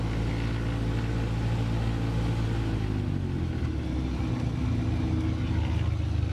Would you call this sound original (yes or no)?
yes